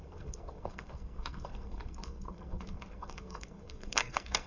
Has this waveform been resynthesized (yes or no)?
yes